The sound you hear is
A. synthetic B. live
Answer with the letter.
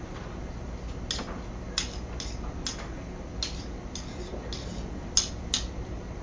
B